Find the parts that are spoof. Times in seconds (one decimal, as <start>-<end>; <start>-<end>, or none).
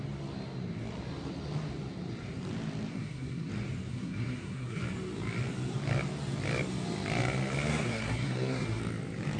2.9-3.5; 3.9-4.8; 7.7-8.8